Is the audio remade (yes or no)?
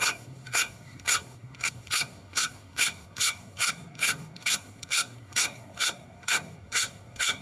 yes